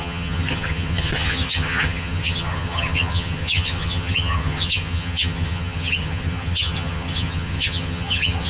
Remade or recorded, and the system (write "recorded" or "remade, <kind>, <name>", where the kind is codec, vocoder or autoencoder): remade, vocoder, HiFi-GAN